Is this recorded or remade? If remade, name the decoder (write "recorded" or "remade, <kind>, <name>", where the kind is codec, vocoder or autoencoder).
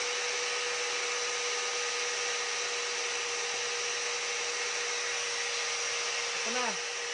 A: recorded